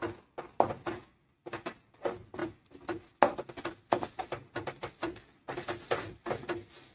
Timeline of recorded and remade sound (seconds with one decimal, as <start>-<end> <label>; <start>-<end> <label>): 0.0-6.9 recorded

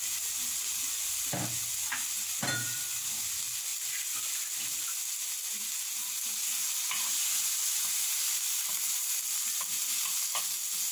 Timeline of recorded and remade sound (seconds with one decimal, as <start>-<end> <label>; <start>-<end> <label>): 0.0-1.9 recorded; 1.9-3.2 remade; 3.2-3.7 recorded; 3.7-5.6 remade; 5.6-10.9 recorded

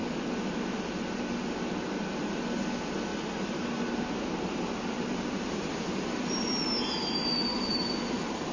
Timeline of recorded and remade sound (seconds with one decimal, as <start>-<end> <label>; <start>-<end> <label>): 0.0-3.1 recorded; 3.1-6.6 remade; 6.6-7.5 recorded; 7.5-8.5 remade